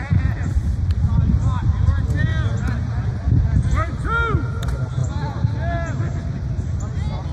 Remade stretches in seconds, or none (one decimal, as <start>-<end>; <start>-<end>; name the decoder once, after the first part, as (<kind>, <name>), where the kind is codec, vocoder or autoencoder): none